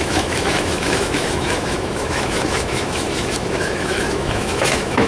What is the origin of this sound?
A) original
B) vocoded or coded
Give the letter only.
B